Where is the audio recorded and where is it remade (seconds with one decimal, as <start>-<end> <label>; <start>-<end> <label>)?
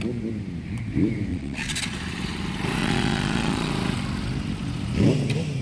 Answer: 0.0-1.3 recorded; 1.3-1.8 remade; 1.8-2.8 recorded; 2.8-3.7 remade; 3.7-5.6 recorded